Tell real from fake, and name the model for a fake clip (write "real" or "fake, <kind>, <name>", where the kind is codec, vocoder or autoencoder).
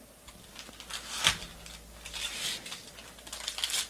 real